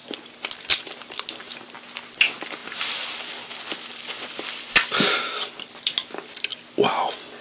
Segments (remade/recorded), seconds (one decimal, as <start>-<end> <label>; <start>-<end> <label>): 0.0-7.4 recorded

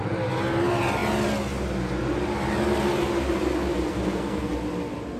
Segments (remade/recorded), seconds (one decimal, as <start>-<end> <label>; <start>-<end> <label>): 0.0-3.9 recorded; 3.9-4.5 remade; 4.5-5.2 recorded